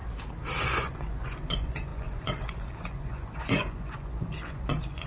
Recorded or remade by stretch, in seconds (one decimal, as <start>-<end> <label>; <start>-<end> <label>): 0.0-0.6 recorded; 0.6-5.1 remade